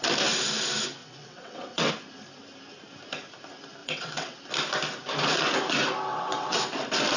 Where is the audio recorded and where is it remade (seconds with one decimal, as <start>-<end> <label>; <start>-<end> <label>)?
0.0-1.0 recorded; 1.0-1.9 remade; 1.9-3.8 recorded; 3.8-4.4 remade; 4.4-6.1 recorded; 6.1-6.6 remade; 6.6-7.2 recorded